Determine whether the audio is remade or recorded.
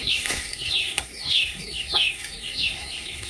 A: remade